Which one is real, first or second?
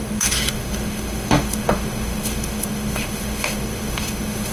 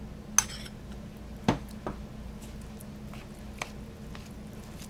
second